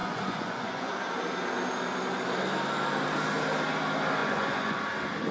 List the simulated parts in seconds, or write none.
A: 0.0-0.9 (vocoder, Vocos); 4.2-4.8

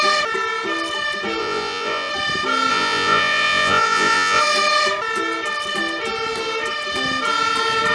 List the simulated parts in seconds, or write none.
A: 1.4-2.1 (vocoder, Vocos); 2.7-4.4

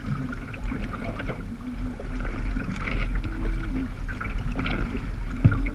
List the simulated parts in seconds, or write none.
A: none

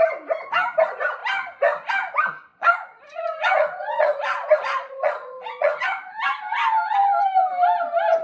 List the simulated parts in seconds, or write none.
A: 2.5-6.1 (vocoder, Vocos)

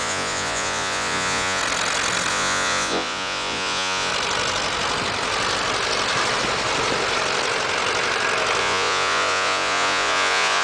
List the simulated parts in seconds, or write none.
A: 0.0-1.6 (vocoder, Vocos); 2.3-4.1; 8.6-10.6

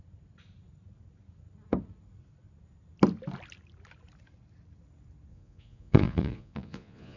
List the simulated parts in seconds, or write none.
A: 5.3-7.2 (vocoder, Vocos)

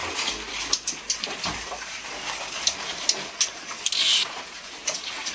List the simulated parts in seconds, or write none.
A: 4.1-5.3 (vocoder, Vocos)